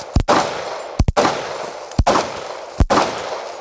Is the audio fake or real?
real